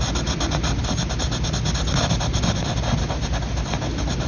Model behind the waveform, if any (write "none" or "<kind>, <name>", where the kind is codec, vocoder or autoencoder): none